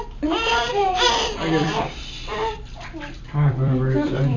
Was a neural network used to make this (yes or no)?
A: yes